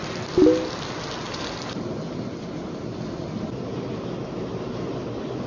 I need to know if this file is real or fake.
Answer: real